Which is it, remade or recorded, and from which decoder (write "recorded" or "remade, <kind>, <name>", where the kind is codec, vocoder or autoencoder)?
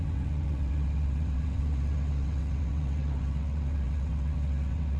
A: remade, vocoder, WaveNeXt